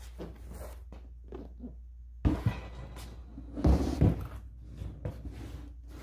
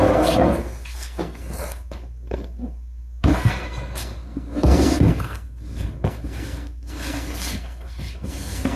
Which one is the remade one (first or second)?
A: second